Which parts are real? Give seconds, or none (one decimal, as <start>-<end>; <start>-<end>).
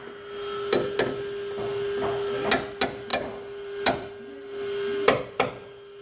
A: 0.0-3.1; 5.5-6.0